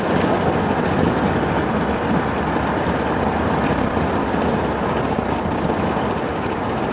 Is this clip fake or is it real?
real